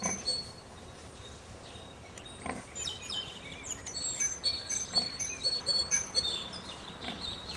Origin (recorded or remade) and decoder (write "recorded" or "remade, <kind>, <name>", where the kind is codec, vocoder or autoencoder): remade, vocoder, BigVGAN v2